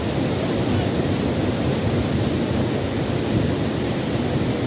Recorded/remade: recorded